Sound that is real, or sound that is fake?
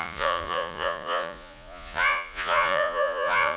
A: fake